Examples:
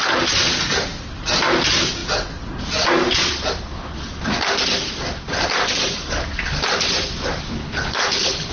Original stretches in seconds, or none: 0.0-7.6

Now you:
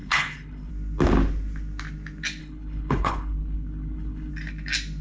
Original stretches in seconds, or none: 0.7-2.4; 4.3-5.0

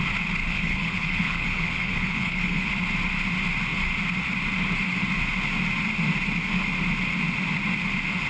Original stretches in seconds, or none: 0.0-0.4; 2.7-8.3

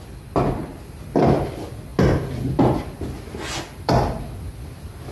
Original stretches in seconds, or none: 0.0-5.1

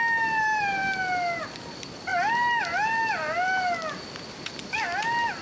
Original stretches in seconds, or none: 0.0-5.4

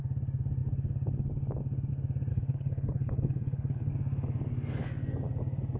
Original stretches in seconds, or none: 0.0-2.3; 3.9-5.8

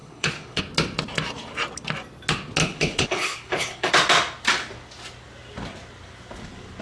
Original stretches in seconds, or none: 0.6-2.6; 3.9-6.8

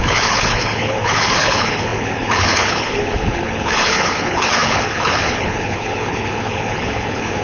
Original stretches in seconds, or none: none